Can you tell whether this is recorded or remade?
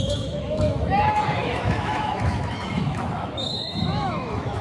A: remade